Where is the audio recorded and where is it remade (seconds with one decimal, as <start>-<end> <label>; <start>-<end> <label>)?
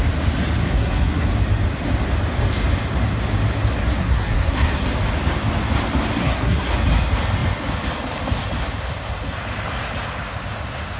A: 0.0-0.6 recorded; 0.6-1.3 remade; 1.3-4.0 recorded; 4.0-4.9 remade; 4.9-6.2 recorded; 6.2-6.7 remade; 6.7-11.0 recorded